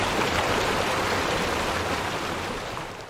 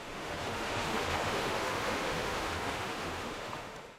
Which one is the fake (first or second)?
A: second